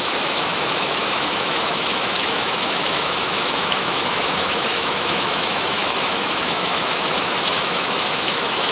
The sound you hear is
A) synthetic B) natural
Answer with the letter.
A